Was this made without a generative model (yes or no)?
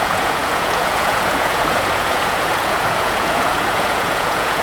no